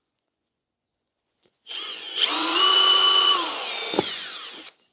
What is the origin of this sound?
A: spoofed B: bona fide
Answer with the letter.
A